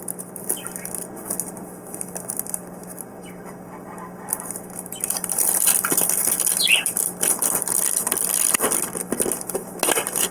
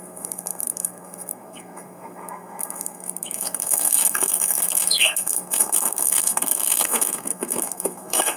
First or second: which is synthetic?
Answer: second